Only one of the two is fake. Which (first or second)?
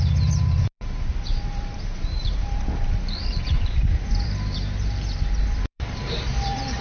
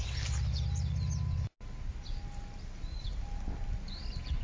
first